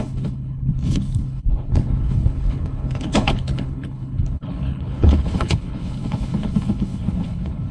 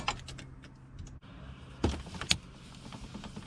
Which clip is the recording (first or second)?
second